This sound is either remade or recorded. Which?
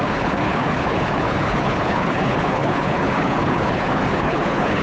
remade